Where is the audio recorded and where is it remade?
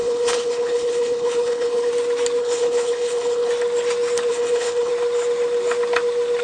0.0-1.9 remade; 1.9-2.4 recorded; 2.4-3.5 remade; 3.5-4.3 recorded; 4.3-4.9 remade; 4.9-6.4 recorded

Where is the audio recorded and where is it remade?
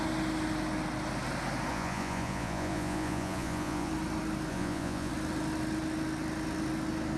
0.0-1.7 recorded; 1.7-3.9 remade; 3.9-4.5 recorded; 4.5-5.1 remade; 5.1-7.2 recorded